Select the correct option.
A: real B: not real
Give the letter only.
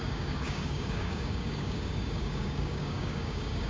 B